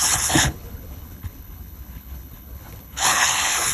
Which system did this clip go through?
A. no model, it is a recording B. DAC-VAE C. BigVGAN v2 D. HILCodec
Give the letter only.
D